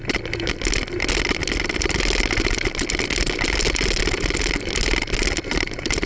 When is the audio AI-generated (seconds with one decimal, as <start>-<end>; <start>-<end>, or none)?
none